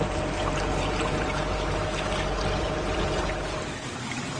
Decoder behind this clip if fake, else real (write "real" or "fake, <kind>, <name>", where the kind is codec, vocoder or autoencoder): real